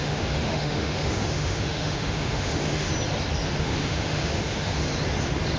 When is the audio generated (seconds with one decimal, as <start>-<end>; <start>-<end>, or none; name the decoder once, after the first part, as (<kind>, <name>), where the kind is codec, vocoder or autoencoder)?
0.0-2.9 (autoencoder, DAC-VAE); 3.6-4.9